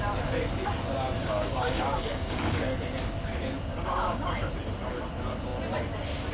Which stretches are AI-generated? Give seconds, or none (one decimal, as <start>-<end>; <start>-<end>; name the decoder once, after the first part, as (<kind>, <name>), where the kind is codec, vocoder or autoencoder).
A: 1.2-2.6 (codec, DAC); 3.7-4.5